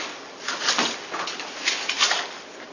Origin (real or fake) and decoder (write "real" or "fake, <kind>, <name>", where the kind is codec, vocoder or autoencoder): real